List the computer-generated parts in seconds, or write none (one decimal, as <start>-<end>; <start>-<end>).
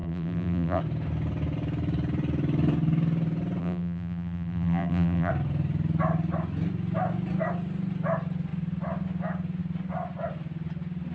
0.0-0.8; 3.6-5.3